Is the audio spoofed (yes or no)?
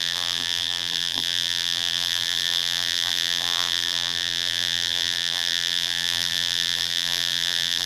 yes